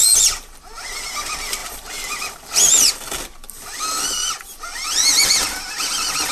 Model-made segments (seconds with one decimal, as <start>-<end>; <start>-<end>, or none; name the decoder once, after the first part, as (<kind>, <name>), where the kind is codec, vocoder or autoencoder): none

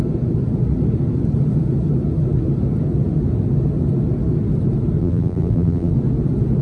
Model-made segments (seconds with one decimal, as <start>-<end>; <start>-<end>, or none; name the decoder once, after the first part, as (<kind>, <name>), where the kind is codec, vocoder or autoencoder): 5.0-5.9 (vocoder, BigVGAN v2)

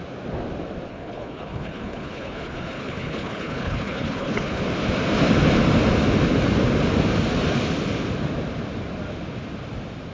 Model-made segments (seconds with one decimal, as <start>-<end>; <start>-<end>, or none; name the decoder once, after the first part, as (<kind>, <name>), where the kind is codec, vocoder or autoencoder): 0.9-4.6 (codec, HILCodec)

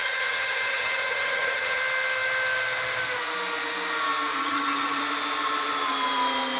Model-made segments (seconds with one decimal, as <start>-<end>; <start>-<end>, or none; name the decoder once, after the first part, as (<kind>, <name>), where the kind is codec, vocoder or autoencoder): 0.0-1.8 (vocoder, HiFi-GAN); 4.3-5.0

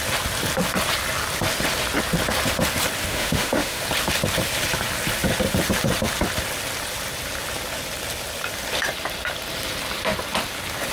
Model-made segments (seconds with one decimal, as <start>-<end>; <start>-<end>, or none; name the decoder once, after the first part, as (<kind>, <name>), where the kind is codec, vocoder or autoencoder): 3.1-3.8 (autoencoder, DAC-VAE)

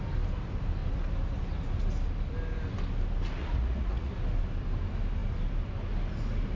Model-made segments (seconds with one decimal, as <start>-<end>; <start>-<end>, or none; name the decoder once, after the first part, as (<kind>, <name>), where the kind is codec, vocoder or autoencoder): 3.4-4.1 (vocoder, Vocos)

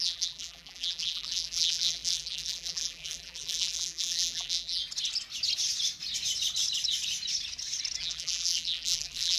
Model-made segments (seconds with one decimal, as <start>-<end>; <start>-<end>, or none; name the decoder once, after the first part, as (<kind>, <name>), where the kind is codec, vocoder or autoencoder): 0.0-4.8 (vocoder, BigVGAN v2); 8.0-9.4

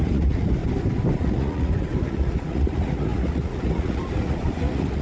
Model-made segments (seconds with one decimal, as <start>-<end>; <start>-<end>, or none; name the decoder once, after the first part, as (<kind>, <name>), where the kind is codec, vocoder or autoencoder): 0.0-0.6 (vocoder, Vocos); 1.2-5.0